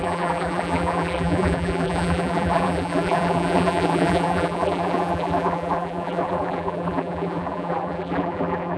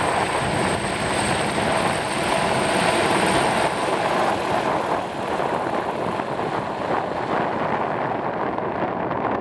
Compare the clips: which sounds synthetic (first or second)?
first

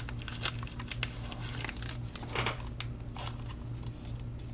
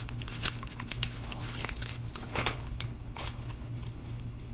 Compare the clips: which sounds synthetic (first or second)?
second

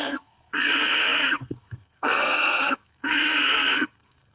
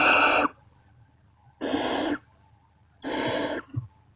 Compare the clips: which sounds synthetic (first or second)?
first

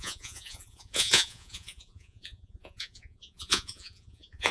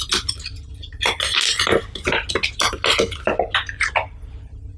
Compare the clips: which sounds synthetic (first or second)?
first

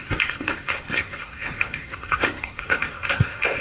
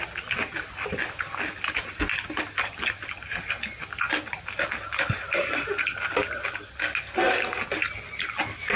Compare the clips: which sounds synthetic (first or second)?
first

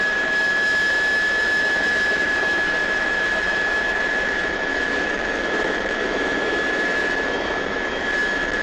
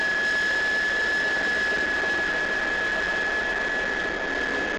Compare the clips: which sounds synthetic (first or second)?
first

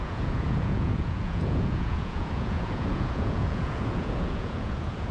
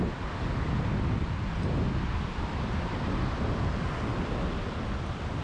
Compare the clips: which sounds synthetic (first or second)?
first